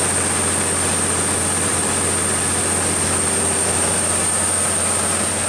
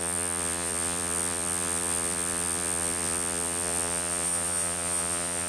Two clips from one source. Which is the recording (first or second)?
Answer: first